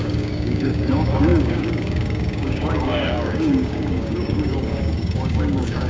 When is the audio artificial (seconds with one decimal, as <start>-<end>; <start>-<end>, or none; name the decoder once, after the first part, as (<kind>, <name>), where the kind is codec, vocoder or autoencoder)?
0.0-5.9 (codec, DAC)